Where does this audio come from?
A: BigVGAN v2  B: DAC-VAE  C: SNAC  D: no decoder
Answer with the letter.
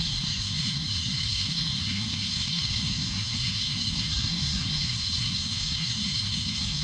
C